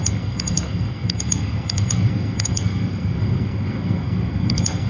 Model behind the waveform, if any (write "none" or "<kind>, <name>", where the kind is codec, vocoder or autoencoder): codec, SNAC